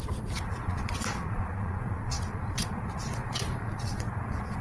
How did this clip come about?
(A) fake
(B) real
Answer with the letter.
A